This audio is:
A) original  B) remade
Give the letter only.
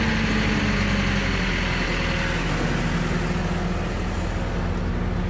A